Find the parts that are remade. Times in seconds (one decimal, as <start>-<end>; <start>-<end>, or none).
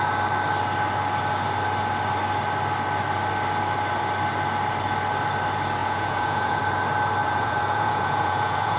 5.8-6.6; 7.2-8.8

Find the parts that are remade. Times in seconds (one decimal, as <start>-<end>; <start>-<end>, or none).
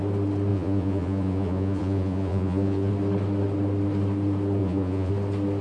0.5-2.9; 4.6-5.1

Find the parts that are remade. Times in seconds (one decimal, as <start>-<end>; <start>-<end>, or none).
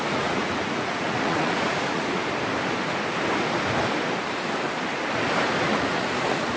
0.0-2.2; 5.6-6.6